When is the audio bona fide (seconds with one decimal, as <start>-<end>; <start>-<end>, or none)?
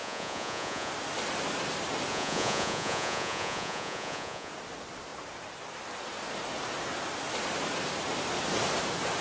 0.9-2.1; 4.5-9.2